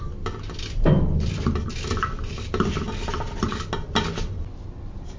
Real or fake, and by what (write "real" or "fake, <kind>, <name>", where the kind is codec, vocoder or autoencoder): real